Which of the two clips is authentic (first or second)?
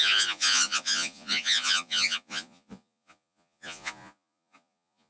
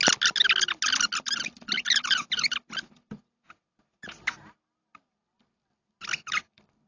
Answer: second